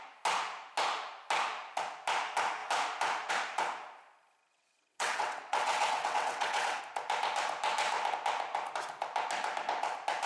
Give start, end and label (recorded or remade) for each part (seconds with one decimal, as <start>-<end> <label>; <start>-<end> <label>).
0.0-4.4 recorded; 4.4-6.8 remade; 6.8-10.3 recorded